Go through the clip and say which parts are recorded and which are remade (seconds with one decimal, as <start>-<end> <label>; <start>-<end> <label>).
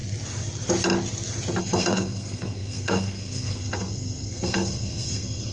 0.0-1.6 recorded; 1.6-5.5 remade